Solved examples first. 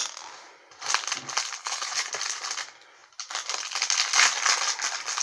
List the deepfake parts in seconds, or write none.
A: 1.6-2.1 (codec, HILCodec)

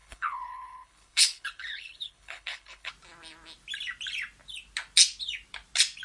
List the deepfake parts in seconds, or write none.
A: 0.0-2.9 (codec, HILCodec)